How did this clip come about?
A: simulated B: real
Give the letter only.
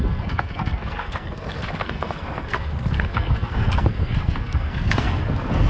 A